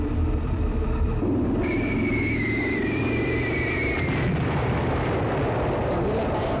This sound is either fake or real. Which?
fake